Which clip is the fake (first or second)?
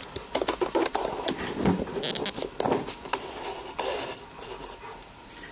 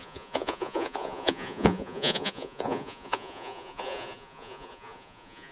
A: second